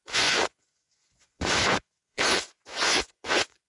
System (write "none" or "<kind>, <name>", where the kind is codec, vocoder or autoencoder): vocoder, Vocos